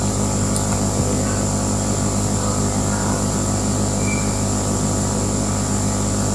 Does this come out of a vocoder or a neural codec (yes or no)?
no